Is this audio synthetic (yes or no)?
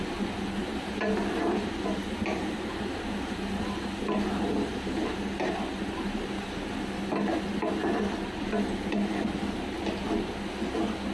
no